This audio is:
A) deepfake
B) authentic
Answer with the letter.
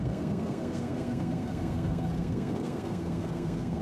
A